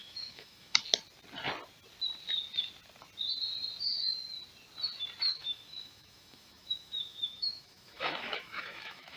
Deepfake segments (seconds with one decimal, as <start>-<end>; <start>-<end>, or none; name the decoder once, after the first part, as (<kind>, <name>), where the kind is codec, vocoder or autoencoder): 0.0-0.8 (autoencoder, DAC-VAE); 5.3-9.2